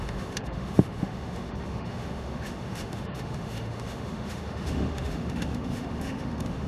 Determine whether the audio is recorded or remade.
remade